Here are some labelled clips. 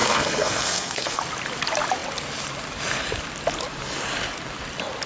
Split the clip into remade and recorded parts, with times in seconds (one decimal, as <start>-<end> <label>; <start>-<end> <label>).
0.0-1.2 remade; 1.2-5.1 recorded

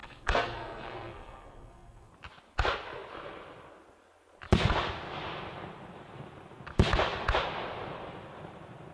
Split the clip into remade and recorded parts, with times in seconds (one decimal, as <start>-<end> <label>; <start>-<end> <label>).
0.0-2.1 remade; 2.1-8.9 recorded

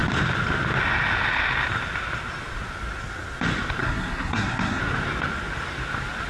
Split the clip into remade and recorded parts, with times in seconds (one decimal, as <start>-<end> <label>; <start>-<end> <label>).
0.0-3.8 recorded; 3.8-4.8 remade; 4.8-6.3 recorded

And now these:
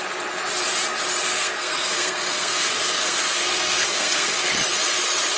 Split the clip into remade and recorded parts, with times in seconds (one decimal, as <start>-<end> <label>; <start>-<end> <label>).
0.0-1.3 recorded; 1.3-4.5 remade; 4.5-5.4 recorded